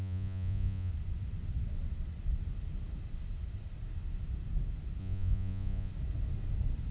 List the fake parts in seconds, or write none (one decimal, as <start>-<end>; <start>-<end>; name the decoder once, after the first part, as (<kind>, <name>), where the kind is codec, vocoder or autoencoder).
0.0-0.9 (vocoder, Vocos); 5.0-5.9